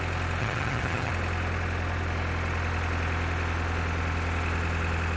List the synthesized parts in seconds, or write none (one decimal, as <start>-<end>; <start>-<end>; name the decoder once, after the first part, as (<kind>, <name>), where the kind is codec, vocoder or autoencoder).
0.4-1.1 (vocoder, HiFi-GAN)